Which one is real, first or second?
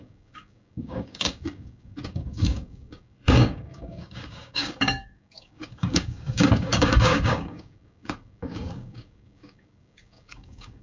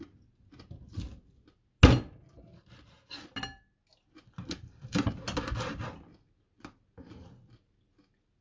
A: second